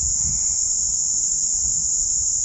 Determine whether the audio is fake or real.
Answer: real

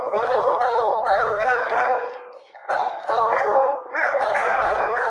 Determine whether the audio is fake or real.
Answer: fake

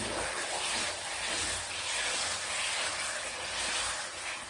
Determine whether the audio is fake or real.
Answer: real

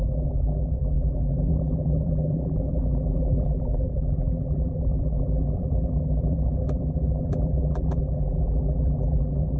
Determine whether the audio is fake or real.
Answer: fake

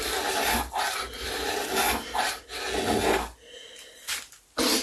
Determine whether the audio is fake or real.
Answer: real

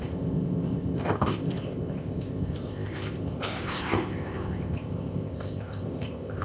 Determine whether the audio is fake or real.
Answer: fake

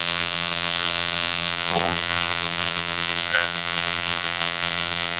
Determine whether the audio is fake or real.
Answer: fake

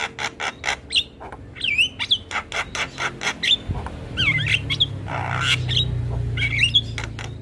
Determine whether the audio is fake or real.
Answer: real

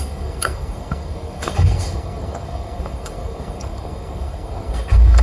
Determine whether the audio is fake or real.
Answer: fake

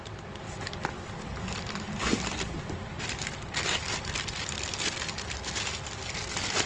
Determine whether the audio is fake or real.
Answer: real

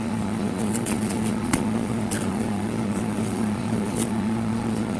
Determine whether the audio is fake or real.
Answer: fake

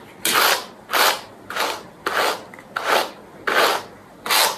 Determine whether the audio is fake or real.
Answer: real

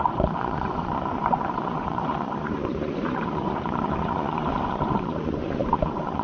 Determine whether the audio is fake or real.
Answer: fake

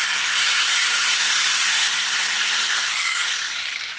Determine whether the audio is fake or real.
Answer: fake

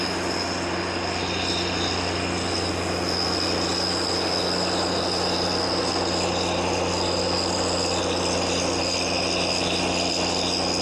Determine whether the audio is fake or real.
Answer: real